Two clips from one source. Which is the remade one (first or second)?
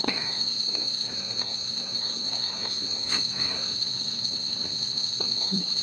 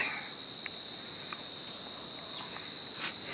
first